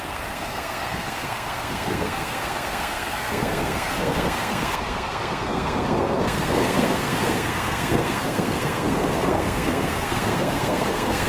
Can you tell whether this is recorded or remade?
remade